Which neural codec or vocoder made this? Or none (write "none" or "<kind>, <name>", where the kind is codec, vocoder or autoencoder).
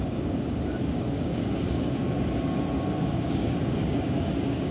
codec, DAC